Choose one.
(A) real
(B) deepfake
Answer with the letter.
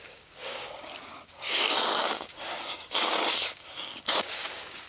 B